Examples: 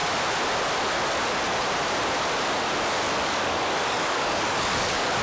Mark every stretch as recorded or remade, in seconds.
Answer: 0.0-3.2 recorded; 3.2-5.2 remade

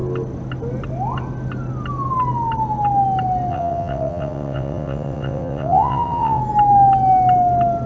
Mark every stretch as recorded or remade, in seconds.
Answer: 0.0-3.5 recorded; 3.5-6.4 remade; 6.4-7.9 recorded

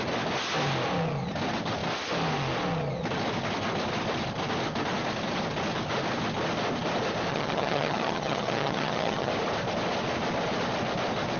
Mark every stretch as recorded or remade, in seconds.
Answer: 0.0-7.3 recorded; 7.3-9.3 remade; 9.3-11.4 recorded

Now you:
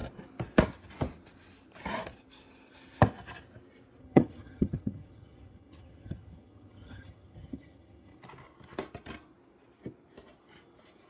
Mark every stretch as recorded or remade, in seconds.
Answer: 0.0-4.0 recorded; 4.0-8.2 remade; 8.2-11.1 recorded